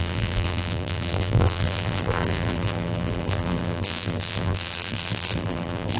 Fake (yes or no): yes